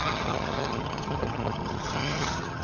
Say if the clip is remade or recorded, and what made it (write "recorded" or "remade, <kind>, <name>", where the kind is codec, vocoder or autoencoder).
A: remade, vocoder, HiFi-GAN